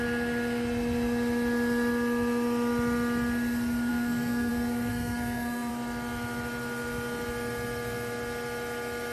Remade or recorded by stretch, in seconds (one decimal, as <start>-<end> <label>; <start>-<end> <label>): 0.0-3.9 recorded; 3.9-4.5 remade; 4.5-4.9 recorded; 4.9-5.7 remade; 5.7-9.1 recorded